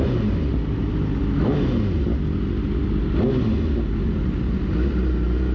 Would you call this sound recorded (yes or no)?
yes